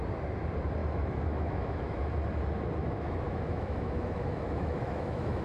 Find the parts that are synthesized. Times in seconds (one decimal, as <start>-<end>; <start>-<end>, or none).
0.8-2.1; 2.8-5.4